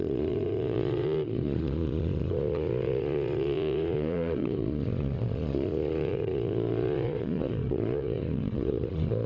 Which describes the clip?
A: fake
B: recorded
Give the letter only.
A